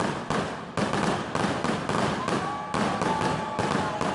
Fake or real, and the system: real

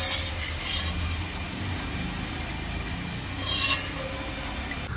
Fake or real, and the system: real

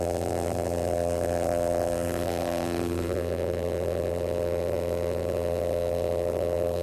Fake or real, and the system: fake, vocoder, BigVGAN v2